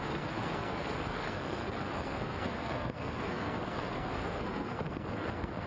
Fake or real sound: fake